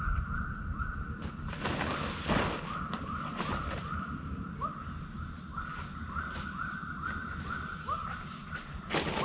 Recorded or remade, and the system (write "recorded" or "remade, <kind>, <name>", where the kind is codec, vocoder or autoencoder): recorded